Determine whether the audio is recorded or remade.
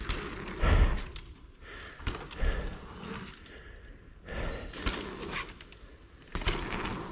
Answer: recorded